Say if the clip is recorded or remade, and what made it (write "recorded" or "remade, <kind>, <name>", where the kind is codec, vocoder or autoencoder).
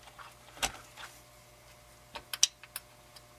recorded